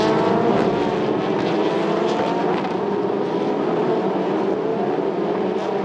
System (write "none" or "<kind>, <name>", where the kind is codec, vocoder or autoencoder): none